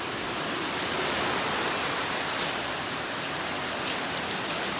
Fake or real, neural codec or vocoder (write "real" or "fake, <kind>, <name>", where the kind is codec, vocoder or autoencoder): real